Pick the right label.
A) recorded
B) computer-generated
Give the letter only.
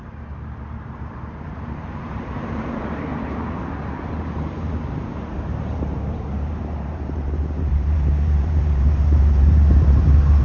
B